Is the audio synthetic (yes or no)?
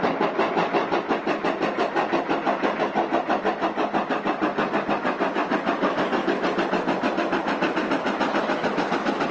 no